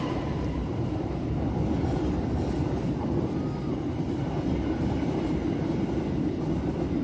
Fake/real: fake